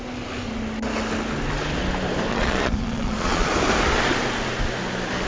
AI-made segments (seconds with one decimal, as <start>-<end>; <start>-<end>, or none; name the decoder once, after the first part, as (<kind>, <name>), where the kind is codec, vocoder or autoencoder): 2.3-3.5 (vocoder, Vocos)